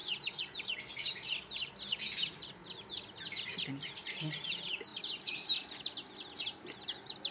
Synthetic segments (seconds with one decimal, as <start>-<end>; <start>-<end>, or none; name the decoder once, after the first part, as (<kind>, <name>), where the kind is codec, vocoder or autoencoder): none